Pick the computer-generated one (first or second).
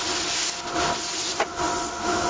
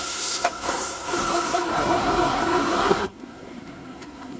second